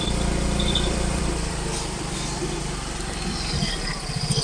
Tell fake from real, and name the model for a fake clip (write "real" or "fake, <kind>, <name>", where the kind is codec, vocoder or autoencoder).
fake, vocoder, BigVGAN v2